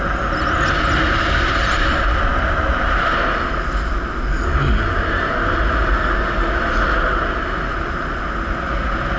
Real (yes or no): yes